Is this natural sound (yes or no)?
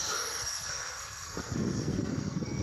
no